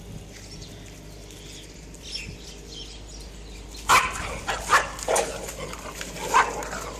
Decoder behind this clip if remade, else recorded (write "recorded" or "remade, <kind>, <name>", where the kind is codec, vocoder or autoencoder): recorded